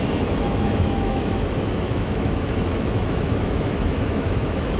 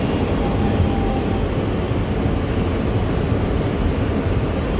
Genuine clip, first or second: second